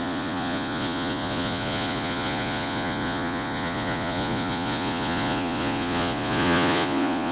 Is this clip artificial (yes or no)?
yes